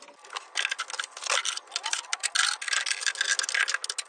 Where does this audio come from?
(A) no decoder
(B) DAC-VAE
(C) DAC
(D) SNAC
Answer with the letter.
A